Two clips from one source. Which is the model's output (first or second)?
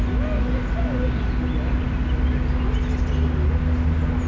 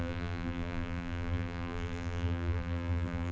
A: second